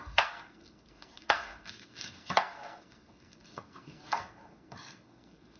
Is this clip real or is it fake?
fake